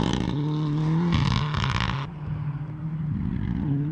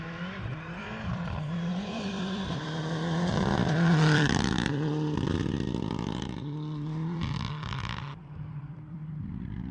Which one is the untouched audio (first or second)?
first